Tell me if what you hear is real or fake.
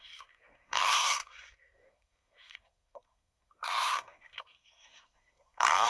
fake